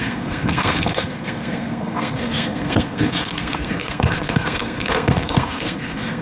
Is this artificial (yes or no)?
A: yes